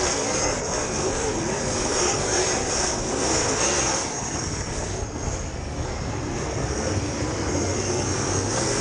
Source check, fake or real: fake